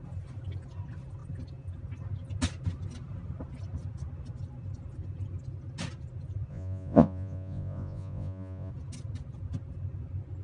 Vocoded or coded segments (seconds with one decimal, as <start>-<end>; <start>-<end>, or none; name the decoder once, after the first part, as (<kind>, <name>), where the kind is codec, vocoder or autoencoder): 6.5-8.7 (vocoder, Vocos)